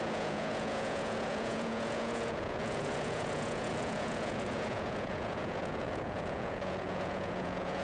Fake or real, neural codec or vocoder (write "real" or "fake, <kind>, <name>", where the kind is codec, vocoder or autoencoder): fake, vocoder, Vocos